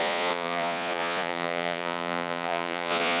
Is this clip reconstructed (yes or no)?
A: yes